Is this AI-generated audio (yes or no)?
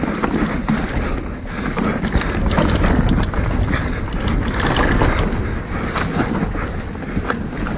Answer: no